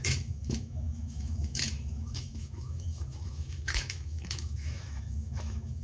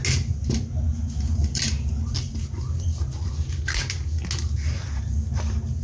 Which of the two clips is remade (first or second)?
first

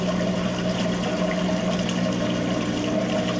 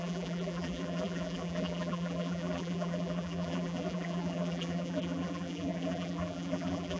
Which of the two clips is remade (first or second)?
second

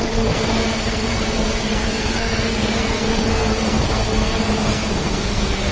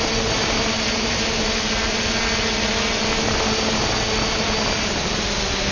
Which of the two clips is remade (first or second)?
first